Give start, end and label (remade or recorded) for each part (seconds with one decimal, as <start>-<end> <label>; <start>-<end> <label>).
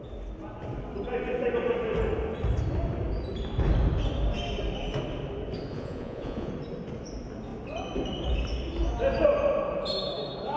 0.0-5.7 recorded; 5.7-6.5 remade; 6.5-10.6 recorded